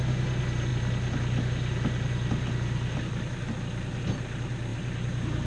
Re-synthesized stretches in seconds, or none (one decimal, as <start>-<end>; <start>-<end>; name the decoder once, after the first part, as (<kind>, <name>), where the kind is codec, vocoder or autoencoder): 4.7-5.5 (vocoder, BigVGAN v2)